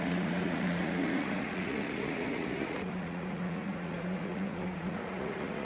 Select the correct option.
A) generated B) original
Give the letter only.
A